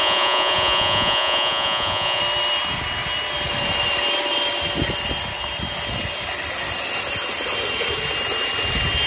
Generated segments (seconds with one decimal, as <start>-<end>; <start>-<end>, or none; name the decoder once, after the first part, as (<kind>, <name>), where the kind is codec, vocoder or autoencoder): 0.0-2.2 (vocoder, Vocos)